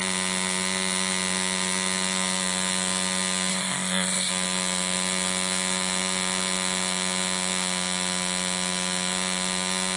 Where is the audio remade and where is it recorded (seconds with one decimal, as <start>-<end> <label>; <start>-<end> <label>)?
0.0-3.5 recorded; 3.5-4.3 remade; 4.3-10.0 recorded